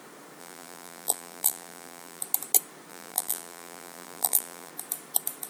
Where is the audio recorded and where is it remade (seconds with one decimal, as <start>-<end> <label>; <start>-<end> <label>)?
0.0-0.4 recorded; 0.4-2.2 remade; 2.2-2.9 recorded; 2.9-4.7 remade; 4.7-5.5 recorded